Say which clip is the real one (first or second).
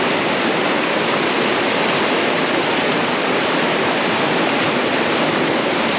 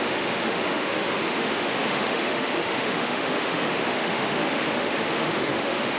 first